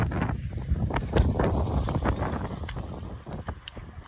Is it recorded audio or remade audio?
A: recorded